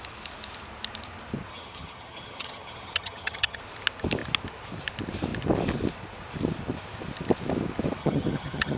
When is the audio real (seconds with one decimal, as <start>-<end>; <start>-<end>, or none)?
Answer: 0.0-1.5; 3.6-8.0